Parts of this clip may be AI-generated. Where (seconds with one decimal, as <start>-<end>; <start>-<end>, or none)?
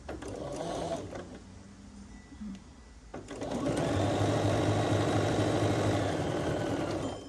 none